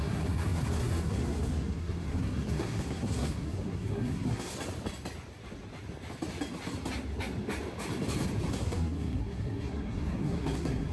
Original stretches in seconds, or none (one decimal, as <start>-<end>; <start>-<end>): 4.5-8.5